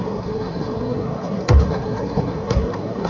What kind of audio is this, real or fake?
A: fake